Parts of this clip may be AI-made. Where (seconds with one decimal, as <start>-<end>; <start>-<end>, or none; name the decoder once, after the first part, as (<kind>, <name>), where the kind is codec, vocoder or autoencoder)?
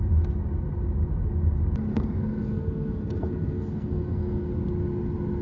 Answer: 1.9-4.5 (codec, SNAC)